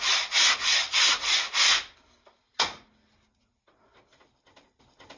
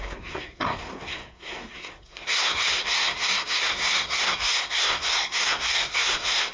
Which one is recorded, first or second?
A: first